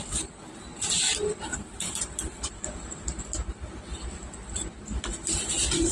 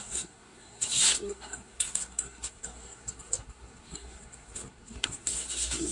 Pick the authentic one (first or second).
first